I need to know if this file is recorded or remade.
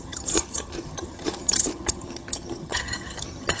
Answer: remade